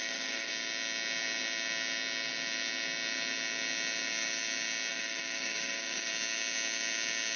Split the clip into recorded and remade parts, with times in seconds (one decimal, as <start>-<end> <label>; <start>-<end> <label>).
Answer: 0.0-0.5 remade; 0.5-4.9 recorded; 4.9-6.1 remade; 6.1-7.4 recorded